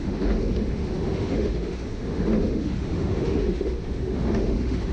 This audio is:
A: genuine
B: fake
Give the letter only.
B